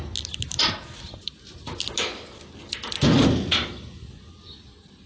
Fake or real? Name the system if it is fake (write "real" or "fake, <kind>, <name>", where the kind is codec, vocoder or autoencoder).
real